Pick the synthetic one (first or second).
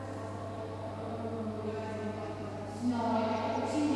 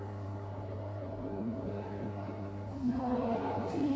second